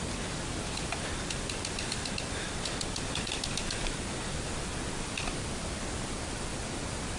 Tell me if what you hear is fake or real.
fake